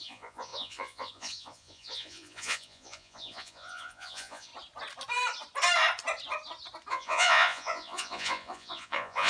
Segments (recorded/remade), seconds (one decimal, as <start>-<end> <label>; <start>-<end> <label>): 0.0-4.5 remade; 4.5-6.9 recorded; 6.9-9.3 remade